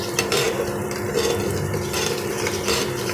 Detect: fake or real fake